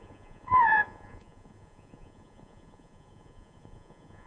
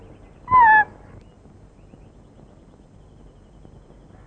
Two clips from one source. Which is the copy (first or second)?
first